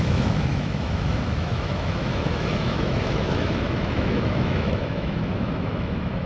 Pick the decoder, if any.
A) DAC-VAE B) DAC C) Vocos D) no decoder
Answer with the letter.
A